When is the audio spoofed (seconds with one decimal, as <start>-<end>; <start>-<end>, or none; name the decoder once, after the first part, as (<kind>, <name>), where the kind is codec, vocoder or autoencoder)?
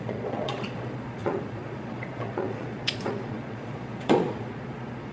0.0-5.1 (vocoder, Vocos)